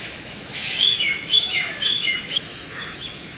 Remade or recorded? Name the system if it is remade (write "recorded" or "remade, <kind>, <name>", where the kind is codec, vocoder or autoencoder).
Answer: remade, autoencoder, DAC-VAE